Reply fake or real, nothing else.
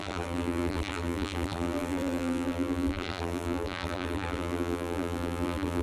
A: fake